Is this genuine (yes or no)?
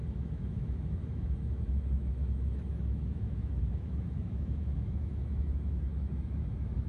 no